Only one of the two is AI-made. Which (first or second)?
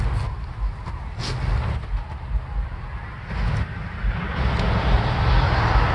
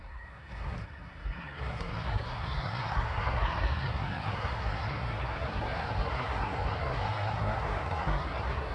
second